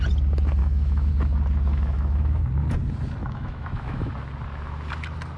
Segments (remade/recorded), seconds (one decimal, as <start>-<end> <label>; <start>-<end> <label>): 0.0-0.6 recorded; 0.6-1.1 remade; 1.1-1.7 recorded; 1.7-2.4 remade; 2.4-3.2 recorded; 3.2-4.1 remade; 4.1-5.4 recorded